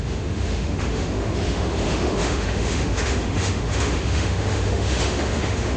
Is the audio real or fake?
fake